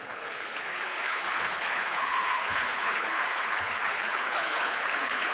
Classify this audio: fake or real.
fake